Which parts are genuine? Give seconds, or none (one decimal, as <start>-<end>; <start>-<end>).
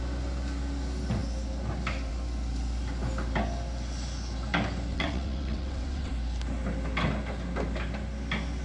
0.0-4.9; 6.1-8.6